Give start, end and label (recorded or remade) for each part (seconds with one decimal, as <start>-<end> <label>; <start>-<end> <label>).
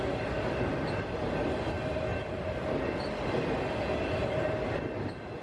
0.0-5.4 recorded